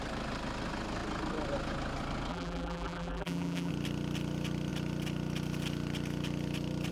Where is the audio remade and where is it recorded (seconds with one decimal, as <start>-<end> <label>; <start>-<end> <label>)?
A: 0.0-2.3 recorded; 2.3-3.7 remade; 3.7-6.9 recorded